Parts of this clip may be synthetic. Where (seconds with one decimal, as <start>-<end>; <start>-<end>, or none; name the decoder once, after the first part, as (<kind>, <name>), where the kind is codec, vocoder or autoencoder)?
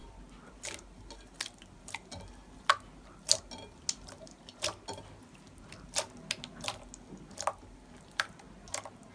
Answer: none